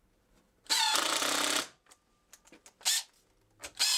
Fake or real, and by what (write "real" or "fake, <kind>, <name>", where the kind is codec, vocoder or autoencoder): real